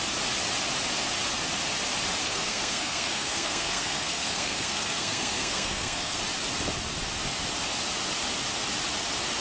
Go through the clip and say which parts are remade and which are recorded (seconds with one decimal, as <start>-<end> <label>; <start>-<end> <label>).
0.0-2.2 recorded; 2.2-6.2 remade; 6.2-9.4 recorded